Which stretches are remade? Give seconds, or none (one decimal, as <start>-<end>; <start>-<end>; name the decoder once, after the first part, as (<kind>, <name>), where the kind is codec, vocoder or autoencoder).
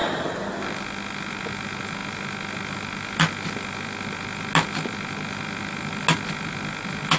none